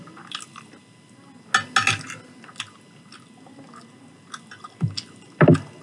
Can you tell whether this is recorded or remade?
recorded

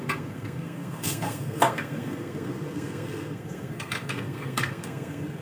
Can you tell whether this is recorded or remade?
remade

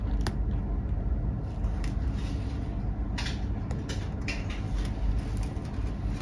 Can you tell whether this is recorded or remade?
recorded